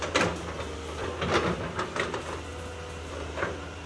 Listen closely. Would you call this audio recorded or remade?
recorded